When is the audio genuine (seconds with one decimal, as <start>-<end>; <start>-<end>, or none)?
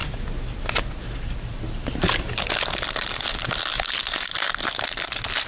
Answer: 0.0-5.5